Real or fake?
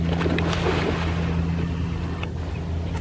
real